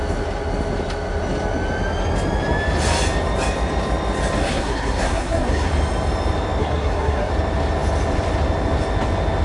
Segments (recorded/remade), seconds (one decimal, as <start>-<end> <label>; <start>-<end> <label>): 0.0-4.4 recorded; 4.4-5.7 remade; 5.7-6.6 recorded; 6.6-7.3 remade; 7.3-9.4 recorded